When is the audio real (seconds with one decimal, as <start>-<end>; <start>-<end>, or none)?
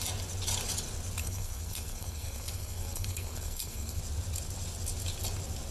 0.0-1.2; 4.0-5.7